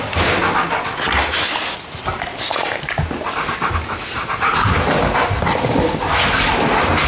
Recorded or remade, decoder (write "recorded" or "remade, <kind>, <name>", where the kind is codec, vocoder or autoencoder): recorded